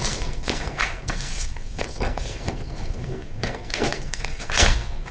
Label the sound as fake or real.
fake